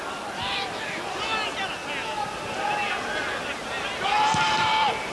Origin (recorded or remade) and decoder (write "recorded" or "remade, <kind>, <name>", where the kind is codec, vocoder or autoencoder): recorded